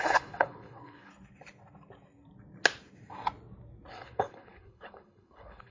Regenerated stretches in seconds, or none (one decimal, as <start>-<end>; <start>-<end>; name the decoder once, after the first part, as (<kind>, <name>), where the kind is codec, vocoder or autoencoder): 0.0-1.1 (codec, HILCodec); 3.9-5.7